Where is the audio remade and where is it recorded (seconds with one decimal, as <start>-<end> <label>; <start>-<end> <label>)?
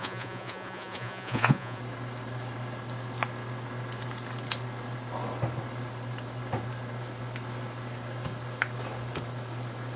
0.0-1.8 remade; 1.8-10.0 recorded